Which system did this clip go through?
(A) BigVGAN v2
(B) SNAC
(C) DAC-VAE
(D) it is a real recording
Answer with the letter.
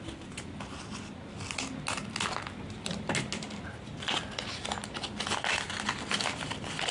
D